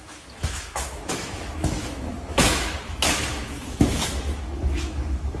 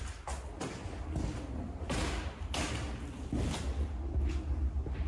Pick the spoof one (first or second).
first